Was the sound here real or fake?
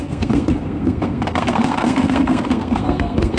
fake